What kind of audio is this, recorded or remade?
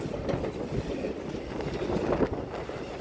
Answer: recorded